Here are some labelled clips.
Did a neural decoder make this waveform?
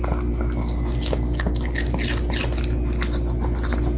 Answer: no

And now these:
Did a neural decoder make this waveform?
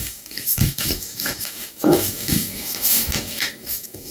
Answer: yes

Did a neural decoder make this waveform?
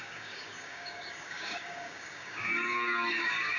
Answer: yes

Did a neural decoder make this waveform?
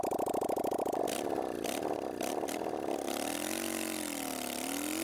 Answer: no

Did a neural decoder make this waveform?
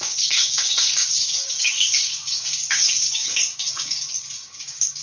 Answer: yes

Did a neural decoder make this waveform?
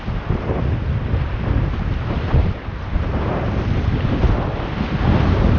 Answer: no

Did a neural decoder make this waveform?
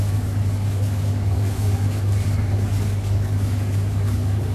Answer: yes